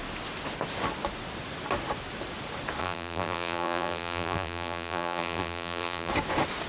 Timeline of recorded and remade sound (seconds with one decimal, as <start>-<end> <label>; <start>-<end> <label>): 0.0-2.8 recorded; 2.8-6.1 remade; 6.1-6.7 recorded